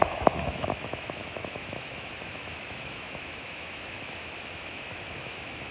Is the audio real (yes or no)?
no